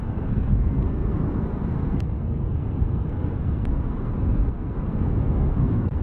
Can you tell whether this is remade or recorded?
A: remade